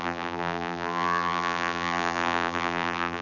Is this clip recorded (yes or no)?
no